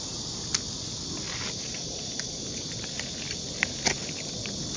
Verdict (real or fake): real